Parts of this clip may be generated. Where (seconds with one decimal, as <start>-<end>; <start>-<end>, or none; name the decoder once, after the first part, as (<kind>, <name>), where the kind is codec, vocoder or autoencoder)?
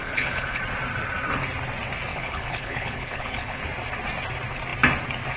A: 0.0-0.6 (codec, HILCodec); 2.1-3.6